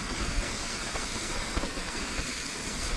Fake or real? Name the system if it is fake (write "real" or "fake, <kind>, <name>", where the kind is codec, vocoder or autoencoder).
fake, codec, SNAC